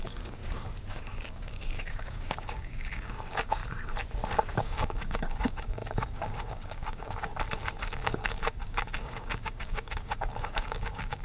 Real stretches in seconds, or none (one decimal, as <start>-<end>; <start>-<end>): 0.4-0.9; 3.6-4.5; 7.3-7.8